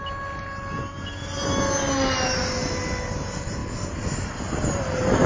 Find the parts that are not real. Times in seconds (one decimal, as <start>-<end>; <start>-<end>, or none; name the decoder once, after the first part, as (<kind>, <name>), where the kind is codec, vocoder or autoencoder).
none